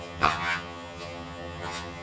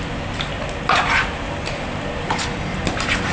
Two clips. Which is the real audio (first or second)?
second